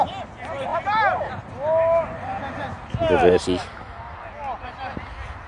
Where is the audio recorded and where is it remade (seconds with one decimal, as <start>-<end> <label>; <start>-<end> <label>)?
0.0-5.5 recorded